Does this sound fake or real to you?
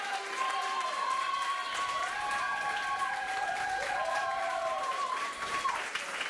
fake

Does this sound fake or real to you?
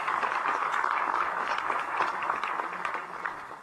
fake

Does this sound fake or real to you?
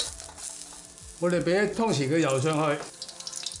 real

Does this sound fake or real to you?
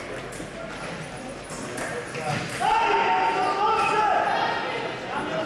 real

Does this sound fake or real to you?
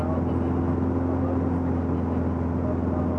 real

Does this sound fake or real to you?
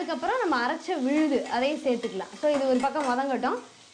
real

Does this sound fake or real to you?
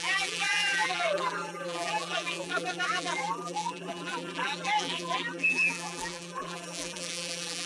fake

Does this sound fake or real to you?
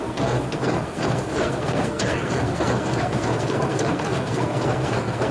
fake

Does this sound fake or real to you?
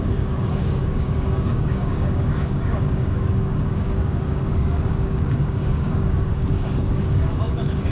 fake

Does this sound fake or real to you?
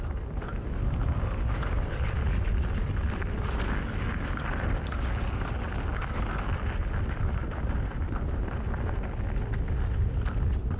real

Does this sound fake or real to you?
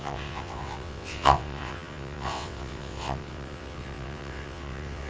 fake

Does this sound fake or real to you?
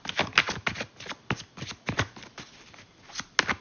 real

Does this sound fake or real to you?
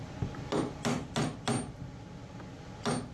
real